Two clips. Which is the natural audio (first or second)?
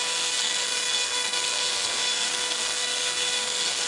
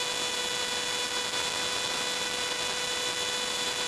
second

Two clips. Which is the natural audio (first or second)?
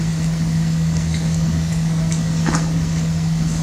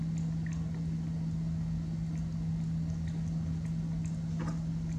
second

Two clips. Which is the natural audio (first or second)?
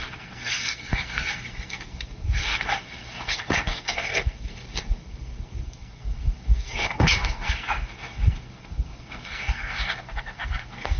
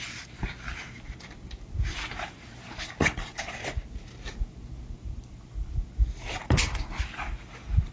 second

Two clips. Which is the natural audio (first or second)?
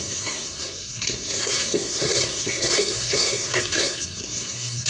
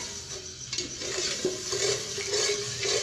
second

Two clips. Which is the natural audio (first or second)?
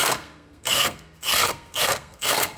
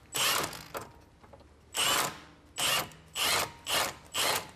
second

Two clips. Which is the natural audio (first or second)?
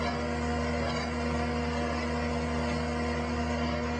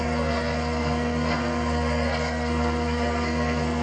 first